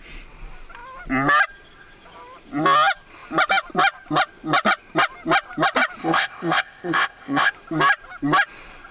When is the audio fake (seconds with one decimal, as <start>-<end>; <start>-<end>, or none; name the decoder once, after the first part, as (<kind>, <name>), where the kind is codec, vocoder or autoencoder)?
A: 6.0-7.5 (codec, ZipCodec)